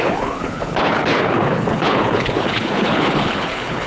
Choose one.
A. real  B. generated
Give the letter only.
B